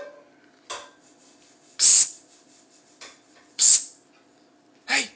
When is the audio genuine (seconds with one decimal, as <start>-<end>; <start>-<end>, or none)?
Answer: 0.0-1.9